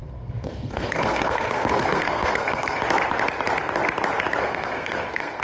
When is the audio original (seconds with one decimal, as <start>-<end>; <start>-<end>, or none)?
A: 2.8-4.4